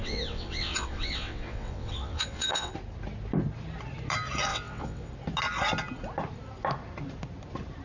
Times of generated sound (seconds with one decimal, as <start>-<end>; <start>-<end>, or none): 0.0-2.7; 4.5-5.1